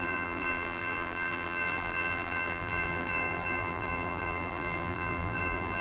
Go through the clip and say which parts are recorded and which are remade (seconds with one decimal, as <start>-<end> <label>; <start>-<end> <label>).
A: 0.0-5.8 remade